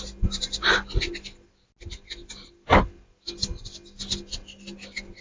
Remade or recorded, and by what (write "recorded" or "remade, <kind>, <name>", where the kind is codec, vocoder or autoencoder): recorded